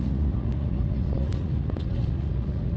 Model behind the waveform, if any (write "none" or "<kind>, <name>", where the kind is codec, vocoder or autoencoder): vocoder, Vocos